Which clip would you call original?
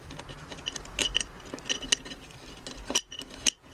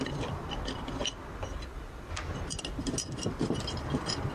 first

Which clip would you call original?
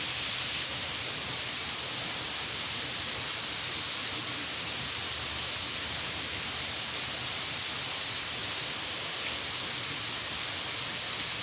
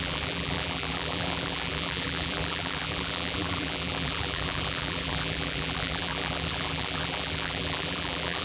first